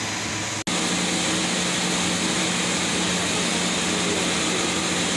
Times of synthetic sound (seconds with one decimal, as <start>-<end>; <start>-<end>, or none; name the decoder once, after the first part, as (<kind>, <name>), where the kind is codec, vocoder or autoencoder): none